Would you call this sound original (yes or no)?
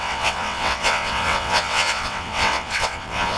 no